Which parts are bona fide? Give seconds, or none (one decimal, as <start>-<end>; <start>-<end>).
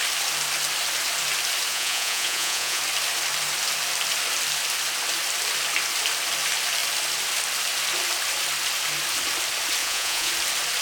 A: 0.0-1.7; 2.8-9.8; 10.3-10.8